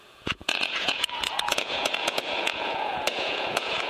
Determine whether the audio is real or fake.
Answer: fake